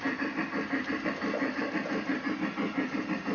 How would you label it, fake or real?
real